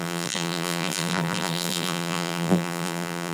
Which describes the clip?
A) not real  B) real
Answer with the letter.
A